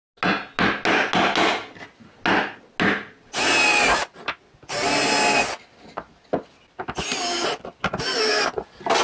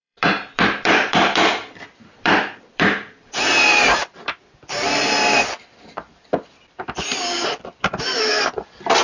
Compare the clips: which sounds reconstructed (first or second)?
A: second